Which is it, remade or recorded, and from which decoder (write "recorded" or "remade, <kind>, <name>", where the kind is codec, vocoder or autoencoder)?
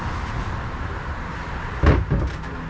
recorded